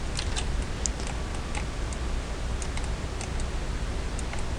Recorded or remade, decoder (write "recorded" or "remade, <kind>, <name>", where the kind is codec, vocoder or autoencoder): recorded